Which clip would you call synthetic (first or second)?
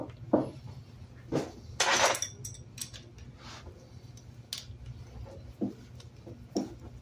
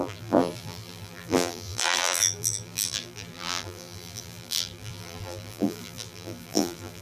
second